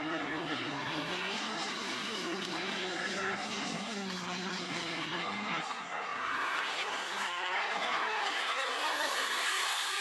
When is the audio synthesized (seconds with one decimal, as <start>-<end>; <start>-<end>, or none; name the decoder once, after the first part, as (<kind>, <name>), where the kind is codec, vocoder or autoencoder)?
0.0-10.0 (codec, SNAC)